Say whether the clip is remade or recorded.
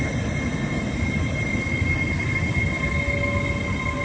recorded